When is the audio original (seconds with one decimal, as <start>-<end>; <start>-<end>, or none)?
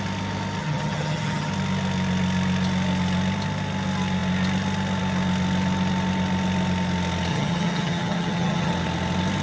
0.0-0.6; 1.5-7.3; 8.7-9.4